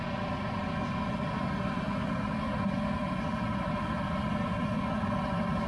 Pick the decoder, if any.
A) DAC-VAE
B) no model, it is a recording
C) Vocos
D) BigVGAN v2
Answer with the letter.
B